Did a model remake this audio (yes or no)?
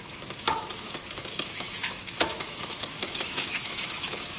yes